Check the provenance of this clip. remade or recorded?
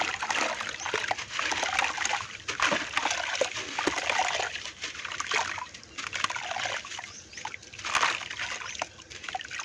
recorded